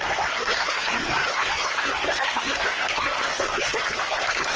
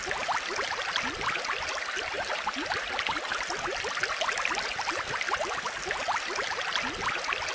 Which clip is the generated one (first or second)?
first